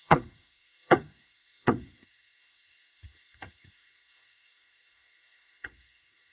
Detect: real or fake fake